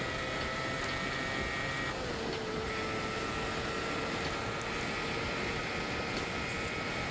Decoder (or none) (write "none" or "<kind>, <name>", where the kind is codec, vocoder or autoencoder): none